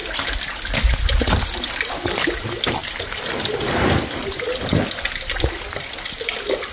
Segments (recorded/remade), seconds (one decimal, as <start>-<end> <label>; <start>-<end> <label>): 0.0-6.7 recorded